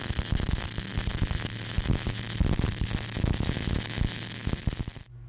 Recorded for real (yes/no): yes